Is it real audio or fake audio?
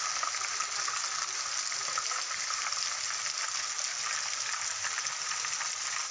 real